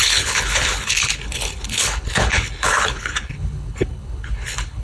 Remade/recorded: remade